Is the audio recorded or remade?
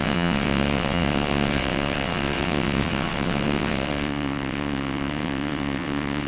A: remade